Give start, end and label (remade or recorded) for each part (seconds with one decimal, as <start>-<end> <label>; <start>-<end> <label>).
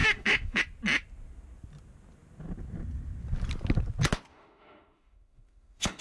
0.0-0.6 remade; 0.6-4.3 recorded; 4.3-6.0 remade